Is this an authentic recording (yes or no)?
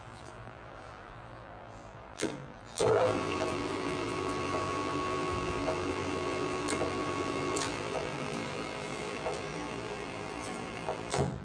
no